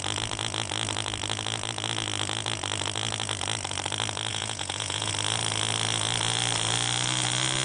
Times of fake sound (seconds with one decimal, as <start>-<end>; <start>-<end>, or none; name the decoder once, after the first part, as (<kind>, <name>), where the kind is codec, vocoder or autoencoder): 4.3-5.1 (vocoder, Vocos)

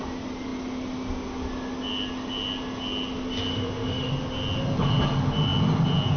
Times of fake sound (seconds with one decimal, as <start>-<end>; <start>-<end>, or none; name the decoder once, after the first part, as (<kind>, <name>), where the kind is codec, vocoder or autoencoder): 3.5-4.1 (autoencoder, DAC-VAE)

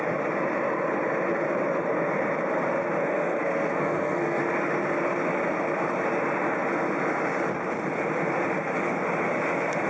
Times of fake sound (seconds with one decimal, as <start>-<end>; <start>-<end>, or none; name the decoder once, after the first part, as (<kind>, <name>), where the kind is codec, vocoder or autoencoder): 3.0-4.4 (codec, SNAC)